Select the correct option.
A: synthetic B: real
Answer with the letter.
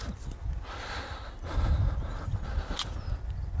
B